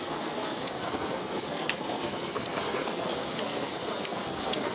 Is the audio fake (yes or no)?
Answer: yes